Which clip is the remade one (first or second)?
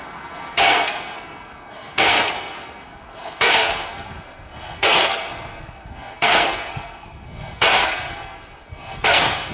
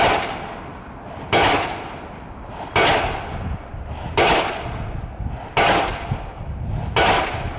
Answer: first